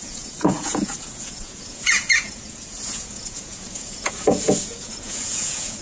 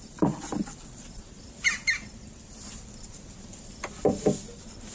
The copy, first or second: first